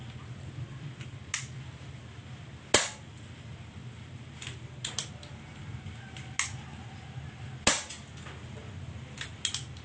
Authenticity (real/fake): real